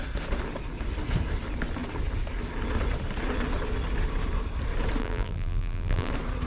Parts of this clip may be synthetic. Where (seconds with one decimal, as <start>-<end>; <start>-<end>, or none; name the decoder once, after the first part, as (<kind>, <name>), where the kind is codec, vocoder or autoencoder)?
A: 5.0-6.1 (vocoder, BigVGAN v2)